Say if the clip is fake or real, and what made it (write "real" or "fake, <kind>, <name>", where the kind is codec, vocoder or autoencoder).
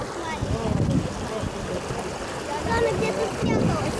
real